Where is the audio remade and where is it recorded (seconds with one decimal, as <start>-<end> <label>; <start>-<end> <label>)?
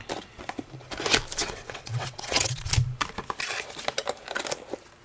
0.0-1.4 recorded; 1.4-2.7 remade; 2.7-5.0 recorded